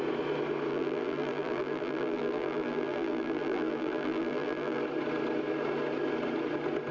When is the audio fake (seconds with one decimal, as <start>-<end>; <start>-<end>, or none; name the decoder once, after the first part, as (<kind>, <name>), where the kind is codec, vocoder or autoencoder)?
0.7-4.8 (vocoder, BigVGAN v2)